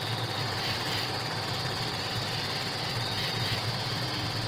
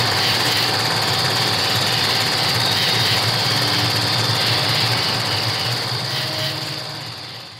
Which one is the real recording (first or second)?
second